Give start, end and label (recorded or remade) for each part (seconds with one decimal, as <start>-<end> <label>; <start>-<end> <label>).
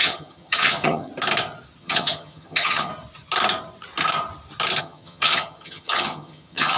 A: 0.0-1.1 remade; 1.1-1.8 recorded; 1.8-2.9 remade; 2.9-4.8 recorded; 4.8-6.8 remade